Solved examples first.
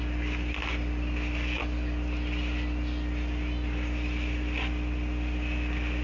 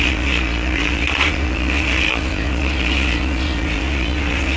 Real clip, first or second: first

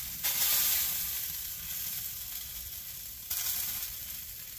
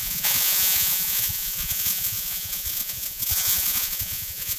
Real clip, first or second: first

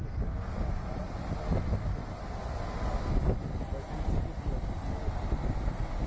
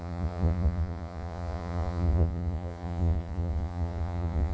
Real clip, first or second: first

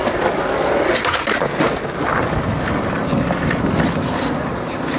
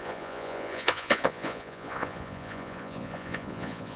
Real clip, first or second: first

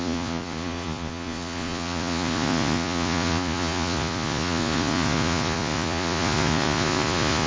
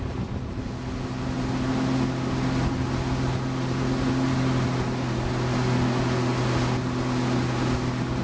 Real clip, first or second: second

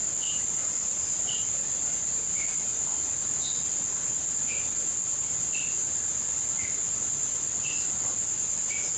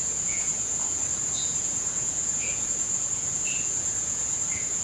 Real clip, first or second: first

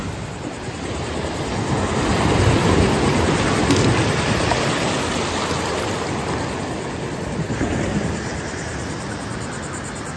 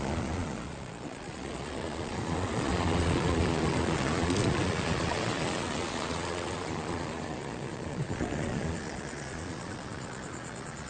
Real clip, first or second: first